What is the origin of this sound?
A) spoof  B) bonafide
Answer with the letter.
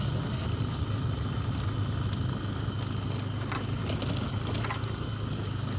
B